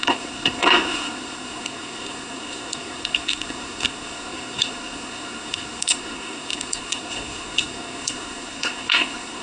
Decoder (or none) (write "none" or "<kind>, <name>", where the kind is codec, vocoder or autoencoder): codec, SNAC